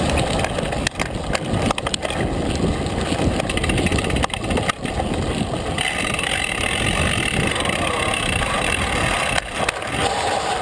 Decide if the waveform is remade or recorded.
recorded